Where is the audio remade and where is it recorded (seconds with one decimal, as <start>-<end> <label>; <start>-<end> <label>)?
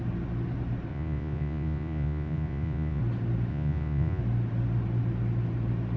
0.0-0.9 recorded; 0.9-3.0 remade; 3.0-3.5 recorded; 3.5-4.2 remade; 4.2-6.0 recorded